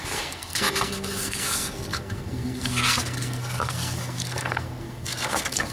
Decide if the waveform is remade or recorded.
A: remade